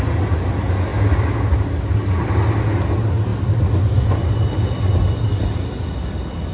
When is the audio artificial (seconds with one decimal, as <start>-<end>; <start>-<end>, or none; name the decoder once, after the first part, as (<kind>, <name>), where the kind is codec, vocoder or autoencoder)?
none